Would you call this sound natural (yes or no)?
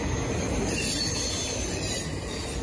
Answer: yes